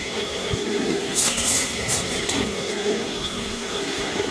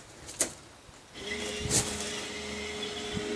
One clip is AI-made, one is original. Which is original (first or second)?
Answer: second